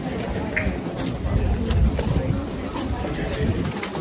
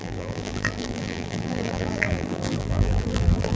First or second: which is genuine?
first